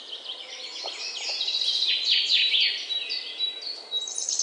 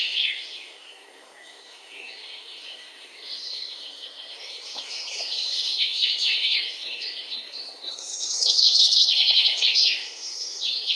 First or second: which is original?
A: first